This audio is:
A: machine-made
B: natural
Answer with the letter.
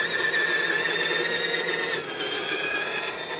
B